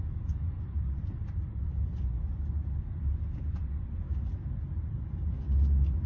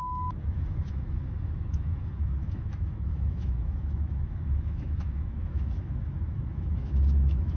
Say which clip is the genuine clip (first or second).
first